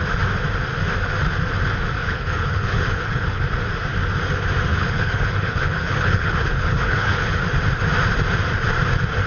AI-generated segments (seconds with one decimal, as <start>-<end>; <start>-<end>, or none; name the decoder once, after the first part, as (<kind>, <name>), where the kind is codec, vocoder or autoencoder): 2.0-3.4 (codec, HILCodec); 4.7-7.4